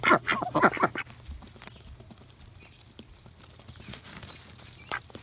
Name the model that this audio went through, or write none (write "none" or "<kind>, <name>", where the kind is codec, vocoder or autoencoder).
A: none